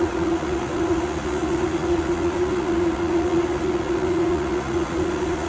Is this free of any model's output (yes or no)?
no